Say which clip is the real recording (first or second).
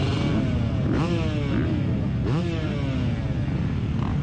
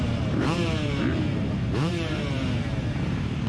first